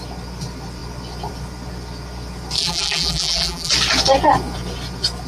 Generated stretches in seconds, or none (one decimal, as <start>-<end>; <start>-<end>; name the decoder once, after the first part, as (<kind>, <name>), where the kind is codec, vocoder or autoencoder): 2.6-3.7 (vocoder, BigVGAN v2)